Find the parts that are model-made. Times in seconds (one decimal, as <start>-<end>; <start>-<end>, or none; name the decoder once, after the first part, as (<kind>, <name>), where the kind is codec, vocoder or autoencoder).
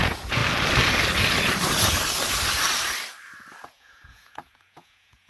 0.0-0.4 (vocoder, Vocos); 3.6-5.3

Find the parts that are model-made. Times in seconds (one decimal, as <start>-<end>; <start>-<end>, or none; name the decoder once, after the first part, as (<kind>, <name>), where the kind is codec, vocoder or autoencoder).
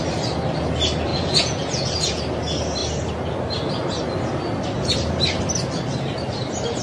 1.1-2.2 (vocoder, Vocos)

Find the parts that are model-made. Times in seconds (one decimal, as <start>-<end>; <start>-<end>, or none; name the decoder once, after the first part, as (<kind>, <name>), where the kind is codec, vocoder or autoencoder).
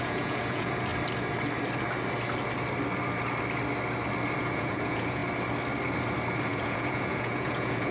0.0-0.9 (vocoder, Vocos); 4.4-5.2; 6.5-7.9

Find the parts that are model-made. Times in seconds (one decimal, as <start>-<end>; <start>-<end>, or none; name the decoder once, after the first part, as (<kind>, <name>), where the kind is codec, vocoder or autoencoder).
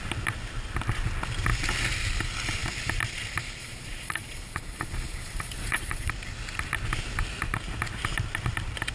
3.6-6.1 (vocoder, Vocos)